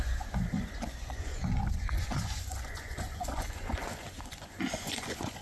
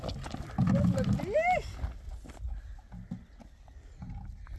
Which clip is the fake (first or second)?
first